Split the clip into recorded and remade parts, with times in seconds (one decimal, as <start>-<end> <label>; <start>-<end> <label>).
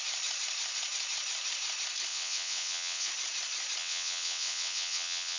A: 0.0-2.1 recorded; 2.1-3.1 remade; 3.1-3.8 recorded; 3.8-5.4 remade